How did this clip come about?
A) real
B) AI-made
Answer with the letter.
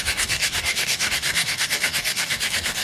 B